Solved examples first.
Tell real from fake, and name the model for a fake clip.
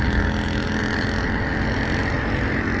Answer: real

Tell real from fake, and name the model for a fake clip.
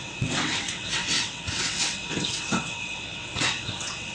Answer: fake, vocoder, WaveNeXt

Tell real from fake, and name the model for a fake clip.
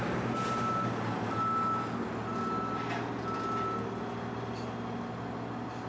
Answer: real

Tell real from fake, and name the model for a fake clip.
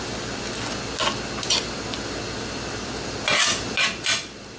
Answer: real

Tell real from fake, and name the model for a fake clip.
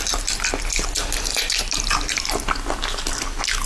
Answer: real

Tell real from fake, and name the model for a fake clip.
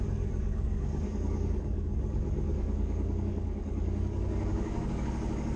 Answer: fake, codec, DAC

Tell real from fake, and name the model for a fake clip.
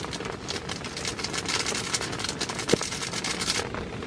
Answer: real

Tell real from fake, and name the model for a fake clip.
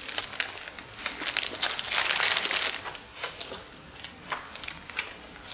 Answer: real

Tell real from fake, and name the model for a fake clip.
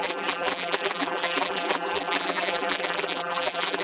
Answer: fake, vocoder, BigVGAN v2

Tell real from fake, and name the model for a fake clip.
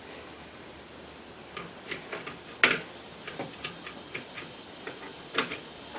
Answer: real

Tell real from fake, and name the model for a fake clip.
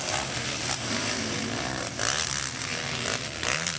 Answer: real